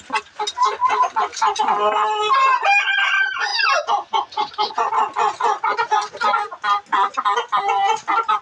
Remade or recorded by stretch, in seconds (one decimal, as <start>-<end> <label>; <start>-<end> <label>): 0.0-8.4 recorded